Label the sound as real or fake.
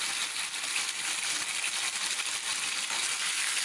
real